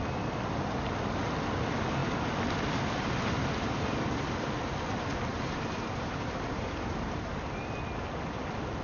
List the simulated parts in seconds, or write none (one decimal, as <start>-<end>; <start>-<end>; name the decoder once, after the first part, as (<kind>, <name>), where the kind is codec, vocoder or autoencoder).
5.3-7.3 (vocoder, BigVGAN v2)